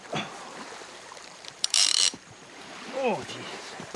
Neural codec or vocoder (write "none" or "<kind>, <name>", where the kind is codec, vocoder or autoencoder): vocoder, BigVGAN v2